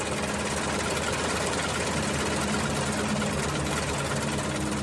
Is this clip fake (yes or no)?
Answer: no